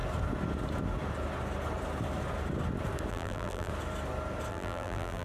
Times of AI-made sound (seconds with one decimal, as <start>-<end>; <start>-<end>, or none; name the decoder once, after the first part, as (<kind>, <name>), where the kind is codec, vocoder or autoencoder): 3.1-3.7 (vocoder, BigVGAN v2); 4.5-5.2